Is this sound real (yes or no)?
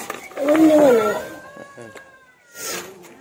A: yes